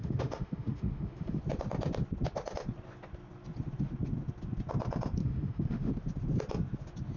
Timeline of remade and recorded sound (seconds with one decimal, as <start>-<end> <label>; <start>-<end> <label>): 0.0-1.4 remade; 1.4-5.2 recorded; 5.2-5.9 remade; 5.9-7.2 recorded